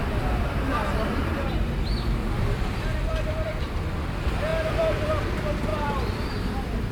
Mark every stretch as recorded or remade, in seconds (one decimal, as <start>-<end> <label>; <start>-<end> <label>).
0.0-2.2 recorded; 2.2-3.8 remade; 3.8-4.5 recorded; 4.5-5.3 remade; 5.3-5.7 recorded; 5.7-6.9 remade